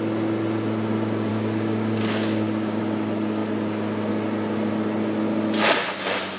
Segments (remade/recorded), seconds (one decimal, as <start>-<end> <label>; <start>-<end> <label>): 0.0-1.3 recorded; 1.3-2.8 remade; 2.8-6.4 recorded